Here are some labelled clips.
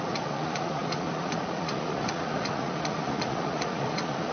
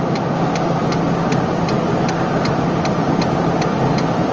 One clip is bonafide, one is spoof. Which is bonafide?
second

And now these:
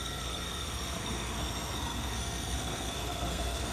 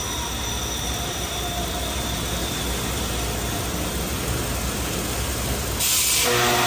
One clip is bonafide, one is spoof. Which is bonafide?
second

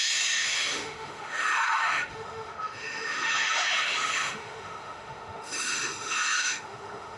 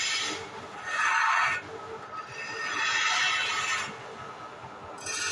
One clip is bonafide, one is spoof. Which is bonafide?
second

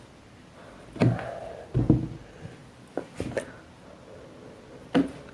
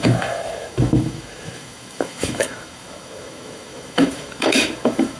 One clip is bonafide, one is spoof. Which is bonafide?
first